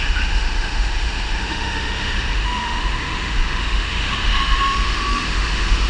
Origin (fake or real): fake